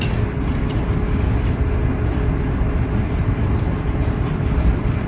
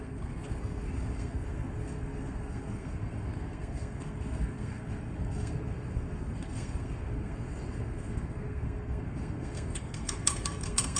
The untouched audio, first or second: first